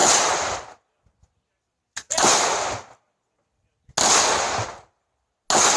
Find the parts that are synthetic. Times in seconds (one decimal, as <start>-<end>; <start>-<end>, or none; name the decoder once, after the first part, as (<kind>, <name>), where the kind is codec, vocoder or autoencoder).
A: none